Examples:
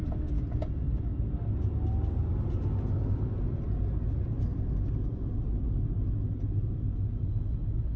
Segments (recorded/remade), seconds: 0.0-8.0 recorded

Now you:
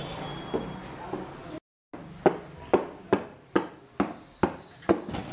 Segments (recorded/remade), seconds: 0.0-5.3 recorded